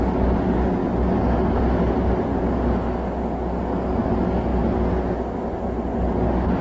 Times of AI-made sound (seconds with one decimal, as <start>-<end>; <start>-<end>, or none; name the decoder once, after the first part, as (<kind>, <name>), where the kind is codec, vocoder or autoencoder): none